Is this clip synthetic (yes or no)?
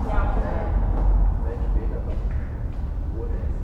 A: no